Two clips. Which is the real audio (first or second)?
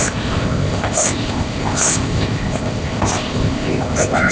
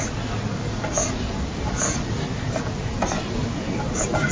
second